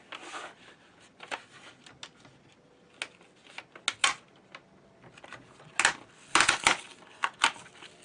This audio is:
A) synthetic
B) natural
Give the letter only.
B